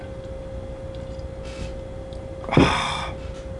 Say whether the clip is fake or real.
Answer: real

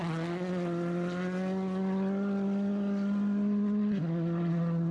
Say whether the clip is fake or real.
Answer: real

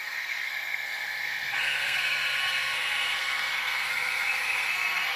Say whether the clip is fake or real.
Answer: fake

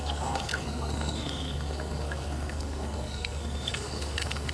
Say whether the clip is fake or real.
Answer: fake